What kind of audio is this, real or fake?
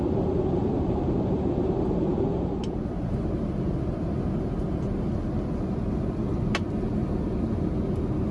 real